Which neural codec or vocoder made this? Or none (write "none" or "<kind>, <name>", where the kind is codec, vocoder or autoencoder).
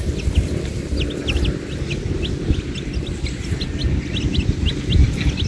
none